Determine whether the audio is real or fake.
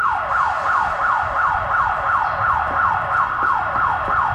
real